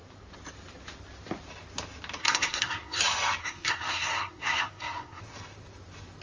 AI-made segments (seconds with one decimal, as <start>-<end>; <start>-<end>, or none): 2.2-3.0; 3.4-5.2